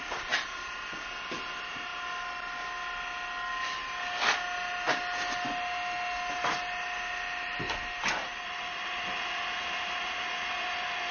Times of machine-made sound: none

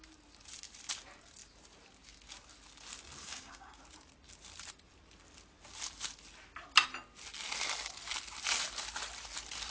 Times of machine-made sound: 3.2-3.8 (codec, DAC)

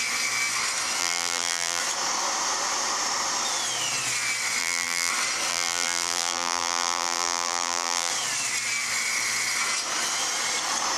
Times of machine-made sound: 1.0-1.8 (vocoder, BigVGAN v2); 4.6-5.1; 5.5-8.1

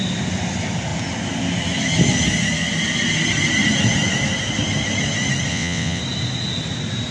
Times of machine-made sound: 5.5-6.0 (vocoder, WaveNeXt)